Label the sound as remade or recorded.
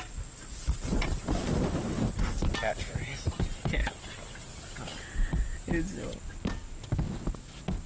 recorded